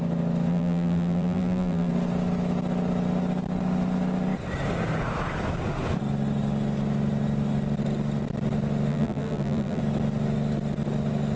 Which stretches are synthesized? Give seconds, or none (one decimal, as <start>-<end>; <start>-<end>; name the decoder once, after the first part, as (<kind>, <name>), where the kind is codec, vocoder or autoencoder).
0.5-1.9 (vocoder, BigVGAN v2); 8.9-9.8